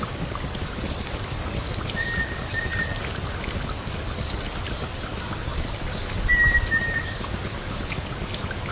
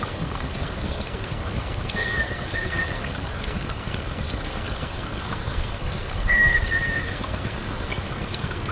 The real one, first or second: first